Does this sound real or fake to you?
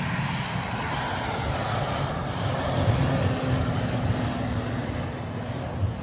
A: real